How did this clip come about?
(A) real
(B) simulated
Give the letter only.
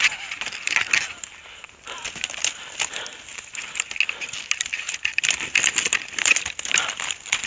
A